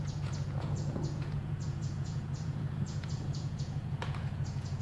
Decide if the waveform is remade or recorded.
remade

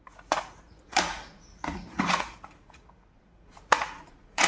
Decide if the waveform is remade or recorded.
remade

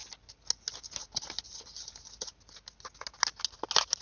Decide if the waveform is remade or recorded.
recorded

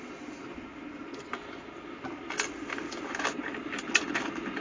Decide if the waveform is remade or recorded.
recorded